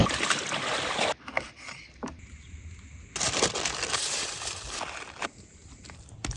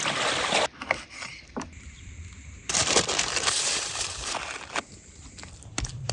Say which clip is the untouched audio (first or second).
first